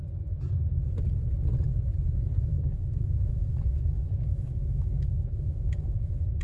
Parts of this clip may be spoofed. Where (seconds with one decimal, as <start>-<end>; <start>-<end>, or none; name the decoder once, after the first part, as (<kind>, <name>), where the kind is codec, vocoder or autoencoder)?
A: 2.5-6.4 (autoencoder, DAC-VAE)